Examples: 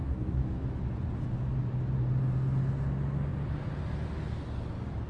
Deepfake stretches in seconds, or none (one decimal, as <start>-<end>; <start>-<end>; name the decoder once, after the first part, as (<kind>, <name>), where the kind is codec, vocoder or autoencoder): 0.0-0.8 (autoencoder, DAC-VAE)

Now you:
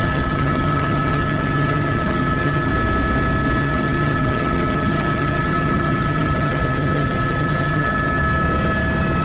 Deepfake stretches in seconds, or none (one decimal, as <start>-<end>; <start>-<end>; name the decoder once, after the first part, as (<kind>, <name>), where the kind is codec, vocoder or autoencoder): 0.0-2.7 (vocoder, HiFi-GAN); 3.6-8.2

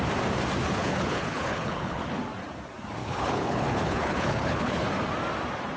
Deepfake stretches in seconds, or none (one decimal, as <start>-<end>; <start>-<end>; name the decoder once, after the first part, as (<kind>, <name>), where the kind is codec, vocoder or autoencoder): 0.8-2.1 (codec, HILCodec); 3.0-4.8